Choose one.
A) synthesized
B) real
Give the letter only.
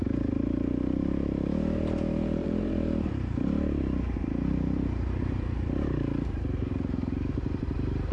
A